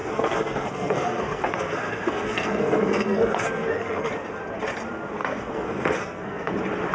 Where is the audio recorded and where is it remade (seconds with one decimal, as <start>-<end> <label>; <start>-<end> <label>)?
0.0-4.1 remade; 4.1-5.2 recorded; 5.2-6.5 remade; 6.5-6.9 recorded

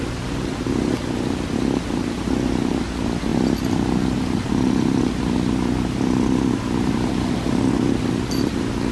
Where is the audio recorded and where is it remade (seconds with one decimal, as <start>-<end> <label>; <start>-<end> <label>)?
0.0-8.9 recorded